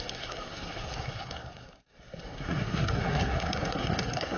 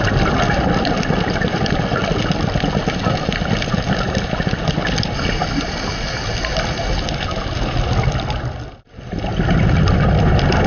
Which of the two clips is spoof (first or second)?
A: first